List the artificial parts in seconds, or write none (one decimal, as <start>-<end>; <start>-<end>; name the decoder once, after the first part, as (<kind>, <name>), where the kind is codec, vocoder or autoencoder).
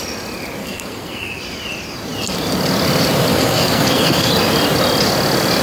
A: 0.6-1.4 (codec, SNAC); 3.3-4.3